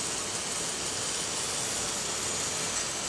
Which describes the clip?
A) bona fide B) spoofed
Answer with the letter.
A